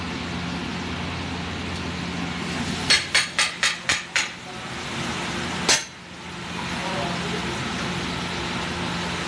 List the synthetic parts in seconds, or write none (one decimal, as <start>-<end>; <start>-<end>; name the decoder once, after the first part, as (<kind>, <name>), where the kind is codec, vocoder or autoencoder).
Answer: none